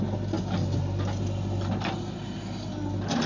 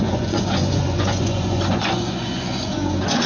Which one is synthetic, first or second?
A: second